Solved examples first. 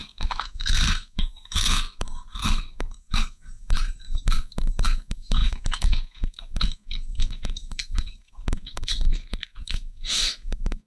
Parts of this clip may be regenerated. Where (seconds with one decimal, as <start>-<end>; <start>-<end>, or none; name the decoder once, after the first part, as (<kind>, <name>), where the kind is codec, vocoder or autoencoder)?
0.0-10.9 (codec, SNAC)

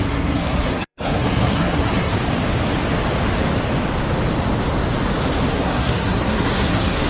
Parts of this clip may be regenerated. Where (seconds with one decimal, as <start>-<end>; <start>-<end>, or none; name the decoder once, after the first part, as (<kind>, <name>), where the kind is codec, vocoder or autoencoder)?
0.0-2.1 (codec, SNAC); 5.5-7.1

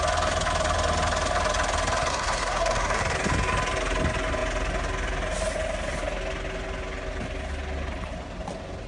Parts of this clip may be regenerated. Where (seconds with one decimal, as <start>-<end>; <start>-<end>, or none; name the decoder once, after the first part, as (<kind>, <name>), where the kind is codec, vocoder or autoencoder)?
2.1-3.0 (codec, SNAC)

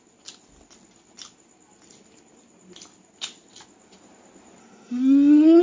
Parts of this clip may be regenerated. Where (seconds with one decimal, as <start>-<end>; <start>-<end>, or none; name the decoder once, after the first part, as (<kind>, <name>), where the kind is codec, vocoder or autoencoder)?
4.6-5.6 (codec, SNAC)